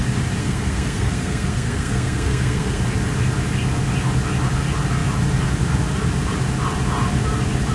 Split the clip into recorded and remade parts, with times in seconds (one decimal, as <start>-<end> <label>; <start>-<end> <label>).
0.0-0.4 recorded; 0.4-2.8 remade; 2.8-7.7 recorded